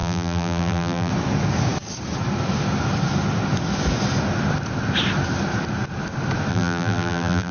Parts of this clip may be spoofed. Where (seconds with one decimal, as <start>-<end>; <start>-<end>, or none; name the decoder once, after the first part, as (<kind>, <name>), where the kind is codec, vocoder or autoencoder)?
0.0-1.1 (vocoder, BigVGAN v2); 6.5-7.5